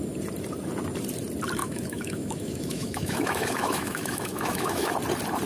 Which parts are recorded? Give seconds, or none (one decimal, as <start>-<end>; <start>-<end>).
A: 0.0-1.6; 4.9-5.5